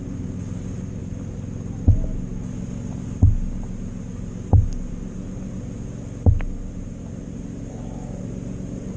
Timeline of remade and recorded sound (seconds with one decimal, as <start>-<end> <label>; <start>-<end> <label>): 0.0-7.7 recorded; 7.7-8.2 remade; 8.2-9.0 recorded